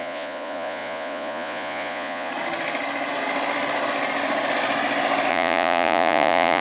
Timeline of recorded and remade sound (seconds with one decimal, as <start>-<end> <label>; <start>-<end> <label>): 0.0-2.3 remade; 2.3-5.3 recorded; 5.3-6.6 remade